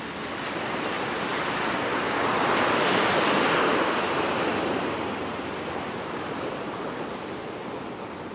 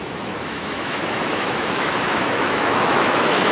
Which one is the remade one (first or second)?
second